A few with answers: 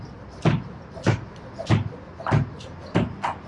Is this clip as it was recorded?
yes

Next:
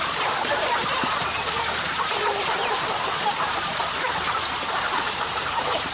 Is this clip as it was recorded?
no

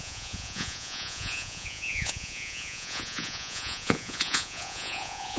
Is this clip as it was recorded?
no